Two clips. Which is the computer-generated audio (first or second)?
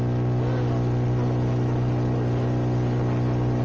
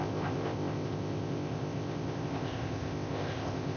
second